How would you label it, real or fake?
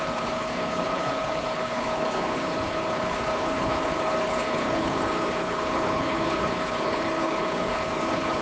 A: fake